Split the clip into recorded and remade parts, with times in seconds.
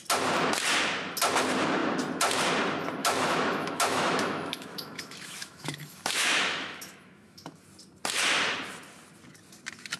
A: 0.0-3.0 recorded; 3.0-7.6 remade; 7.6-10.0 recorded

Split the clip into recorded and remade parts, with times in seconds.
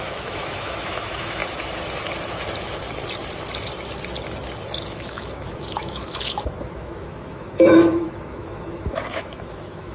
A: 0.0-1.4 remade; 1.4-4.9 recorded; 4.9-9.9 remade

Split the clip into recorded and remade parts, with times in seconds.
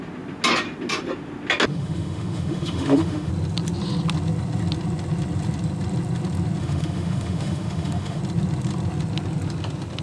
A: 0.0-1.7 recorded; 1.7-3.3 remade; 3.3-6.6 recorded; 6.6-8.2 remade; 8.2-10.0 recorded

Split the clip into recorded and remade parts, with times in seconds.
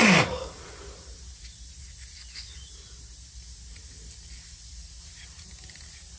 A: 0.0-6.2 recorded